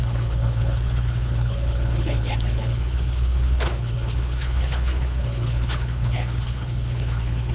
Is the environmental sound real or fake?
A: fake